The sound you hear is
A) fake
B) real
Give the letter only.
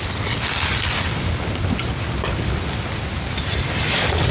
B